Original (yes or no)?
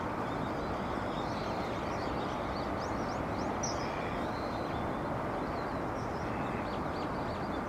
yes